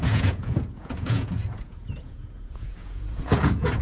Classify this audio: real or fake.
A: fake